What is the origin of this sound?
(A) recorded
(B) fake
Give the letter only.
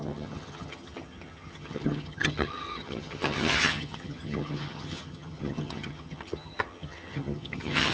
B